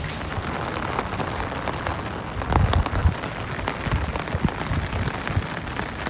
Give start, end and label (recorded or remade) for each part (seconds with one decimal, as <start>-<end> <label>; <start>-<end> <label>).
0.0-6.1 recorded